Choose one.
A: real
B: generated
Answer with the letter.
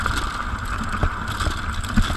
A